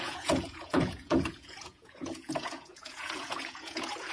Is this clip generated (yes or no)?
yes